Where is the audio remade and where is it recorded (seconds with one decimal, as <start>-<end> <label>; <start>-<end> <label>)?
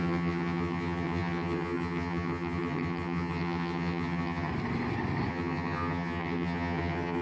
0.0-4.5 remade; 4.5-5.3 recorded; 5.3-7.2 remade